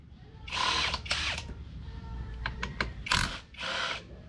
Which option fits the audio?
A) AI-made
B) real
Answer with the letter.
B